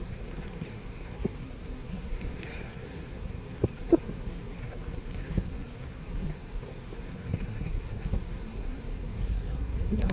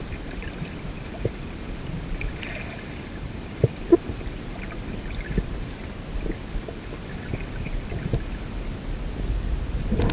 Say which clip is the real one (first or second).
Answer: second